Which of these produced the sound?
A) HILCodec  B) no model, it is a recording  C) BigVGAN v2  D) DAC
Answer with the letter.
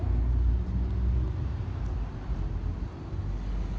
B